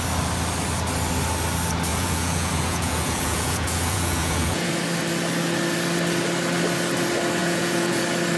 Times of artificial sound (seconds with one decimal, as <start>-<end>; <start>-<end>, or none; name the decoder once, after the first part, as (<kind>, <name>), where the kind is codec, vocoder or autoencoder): 1.9-4.7 (vocoder, Vocos); 7.4-8.0